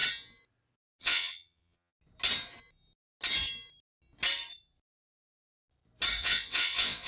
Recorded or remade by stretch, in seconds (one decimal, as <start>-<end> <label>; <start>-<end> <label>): 0.0-1.0 recorded; 1.0-1.9 remade; 1.9-6.2 recorded; 6.2-7.1 remade